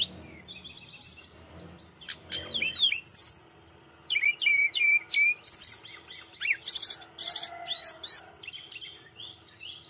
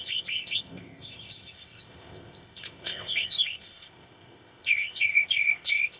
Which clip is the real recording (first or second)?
first